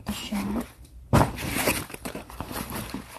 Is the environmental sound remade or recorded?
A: remade